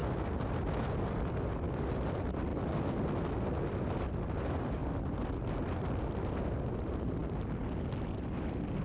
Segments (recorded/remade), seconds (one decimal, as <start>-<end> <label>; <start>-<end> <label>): 0.0-0.6 recorded; 0.6-2.5 remade; 2.5-4.0 recorded; 4.0-4.8 remade; 4.8-6.7 recorded; 6.7-7.2 remade; 7.2-8.8 recorded